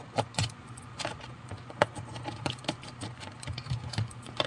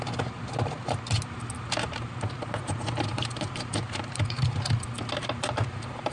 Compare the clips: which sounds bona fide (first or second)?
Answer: second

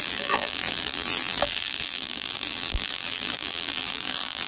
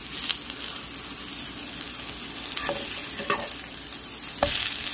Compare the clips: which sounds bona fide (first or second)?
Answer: second